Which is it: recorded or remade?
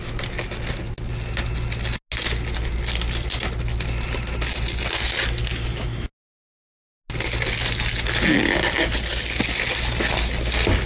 recorded